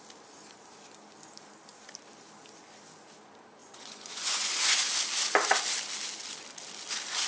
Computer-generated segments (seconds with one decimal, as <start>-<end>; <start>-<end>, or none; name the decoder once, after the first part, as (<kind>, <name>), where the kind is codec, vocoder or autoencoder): 3.6-4.9 (vocoder, Vocos)